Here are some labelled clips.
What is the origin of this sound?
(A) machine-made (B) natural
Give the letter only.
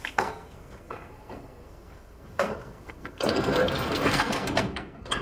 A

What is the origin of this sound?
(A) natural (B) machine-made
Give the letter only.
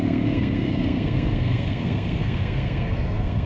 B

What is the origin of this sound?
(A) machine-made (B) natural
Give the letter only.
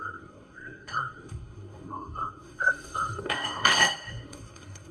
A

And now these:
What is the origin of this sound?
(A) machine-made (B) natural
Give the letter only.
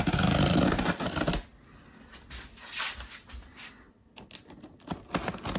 B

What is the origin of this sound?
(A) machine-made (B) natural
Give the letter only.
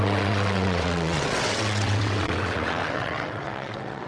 A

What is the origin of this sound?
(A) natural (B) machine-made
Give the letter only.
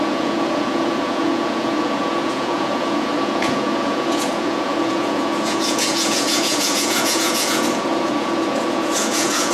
B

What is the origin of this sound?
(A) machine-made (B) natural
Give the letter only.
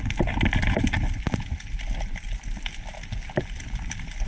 B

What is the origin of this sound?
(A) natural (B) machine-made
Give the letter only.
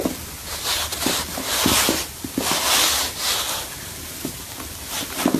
A